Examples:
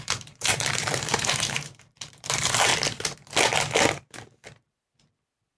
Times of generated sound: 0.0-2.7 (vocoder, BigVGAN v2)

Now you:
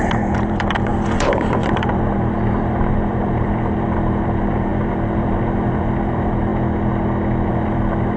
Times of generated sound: 0.0-6.5 (vocoder, BigVGAN v2); 7.5-8.2

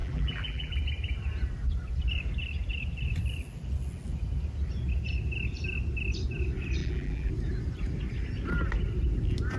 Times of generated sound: 0.0-0.7 (vocoder, BigVGAN v2); 6.8-7.3